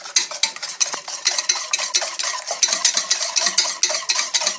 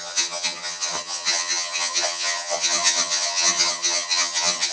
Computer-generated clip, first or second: second